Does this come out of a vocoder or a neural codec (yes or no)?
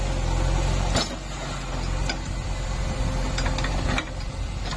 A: no